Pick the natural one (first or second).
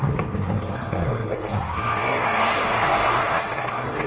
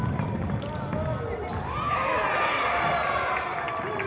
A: second